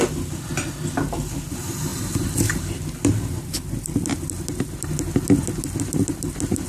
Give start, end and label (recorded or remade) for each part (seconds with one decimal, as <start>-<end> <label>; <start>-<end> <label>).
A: 0.0-6.7 remade